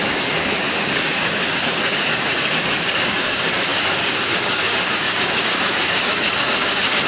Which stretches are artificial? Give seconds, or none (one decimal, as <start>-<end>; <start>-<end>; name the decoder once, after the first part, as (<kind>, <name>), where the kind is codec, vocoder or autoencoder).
0.0-7.1 (codec, DAC)